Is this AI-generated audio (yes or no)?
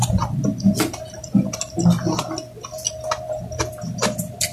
no